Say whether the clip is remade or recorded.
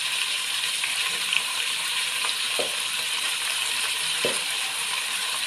remade